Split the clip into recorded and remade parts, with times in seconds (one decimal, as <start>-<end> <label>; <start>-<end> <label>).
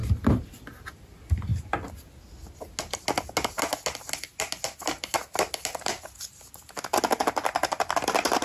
0.0-8.4 recorded